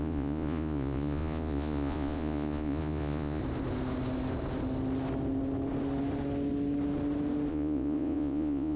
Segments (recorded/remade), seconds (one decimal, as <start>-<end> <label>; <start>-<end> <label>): 0.0-3.4 remade; 3.4-7.5 recorded; 7.5-8.8 remade